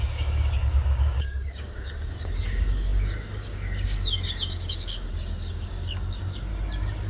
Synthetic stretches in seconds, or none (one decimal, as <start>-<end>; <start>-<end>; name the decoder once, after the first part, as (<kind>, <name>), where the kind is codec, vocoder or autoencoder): 0.0-6.5 (codec, DAC)